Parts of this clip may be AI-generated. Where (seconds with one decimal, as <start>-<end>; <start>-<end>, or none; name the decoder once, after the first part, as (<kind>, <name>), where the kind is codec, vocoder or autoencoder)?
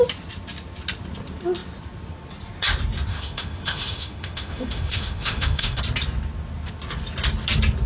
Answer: 3.1-5.8 (autoencoder, DAC-VAE)